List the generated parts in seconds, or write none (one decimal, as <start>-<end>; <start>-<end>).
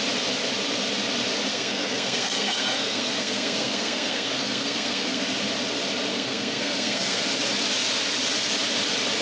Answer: 1.5-5.2; 6.1-7.2